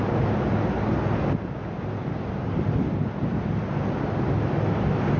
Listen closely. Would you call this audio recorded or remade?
recorded